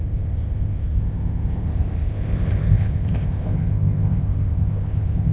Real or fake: fake